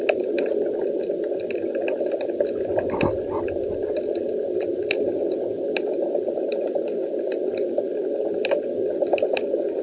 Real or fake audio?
real